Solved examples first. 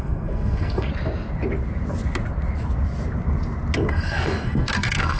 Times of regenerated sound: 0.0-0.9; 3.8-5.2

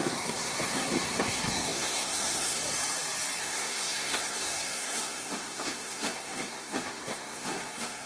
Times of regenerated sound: 0.0-2.6; 3.4-8.1

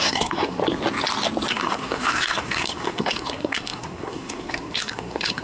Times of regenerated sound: 0.0-0.6; 1.5-5.4

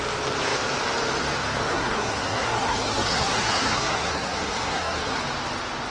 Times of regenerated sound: 1.7-5.2

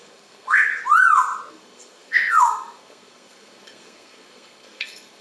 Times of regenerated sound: 0.0-0.7; 1.5-5.2

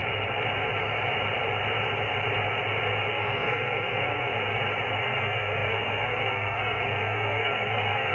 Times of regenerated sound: 3.1-4.3; 4.9-8.1

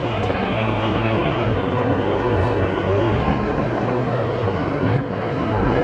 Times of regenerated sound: 0.0-5.8

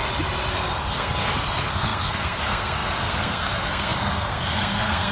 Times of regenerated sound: 0.5-5.1